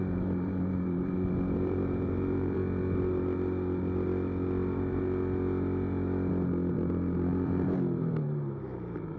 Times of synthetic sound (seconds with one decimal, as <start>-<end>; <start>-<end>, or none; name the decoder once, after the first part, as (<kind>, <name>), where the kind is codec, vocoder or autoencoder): 0.0-2.6 (vocoder, BigVGAN v2); 6.7-9.2